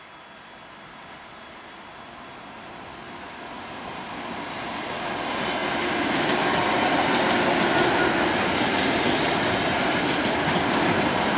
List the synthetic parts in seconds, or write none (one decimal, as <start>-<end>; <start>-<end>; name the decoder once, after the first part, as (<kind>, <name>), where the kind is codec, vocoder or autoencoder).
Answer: none